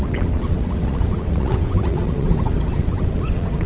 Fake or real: fake